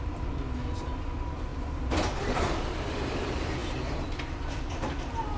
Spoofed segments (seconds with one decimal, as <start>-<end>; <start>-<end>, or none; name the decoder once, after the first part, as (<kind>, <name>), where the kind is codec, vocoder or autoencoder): none